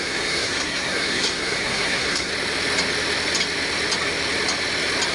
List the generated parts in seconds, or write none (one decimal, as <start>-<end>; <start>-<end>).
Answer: 0.0-2.3